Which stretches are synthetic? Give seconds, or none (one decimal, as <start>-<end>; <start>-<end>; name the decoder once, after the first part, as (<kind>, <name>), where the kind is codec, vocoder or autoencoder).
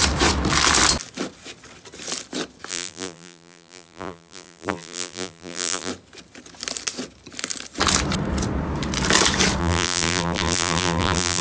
2.7-5.9 (vocoder, BigVGAN v2); 9.6-11.4